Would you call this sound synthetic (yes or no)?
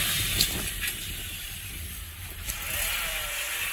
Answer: no